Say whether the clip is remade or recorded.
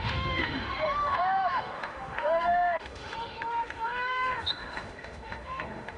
remade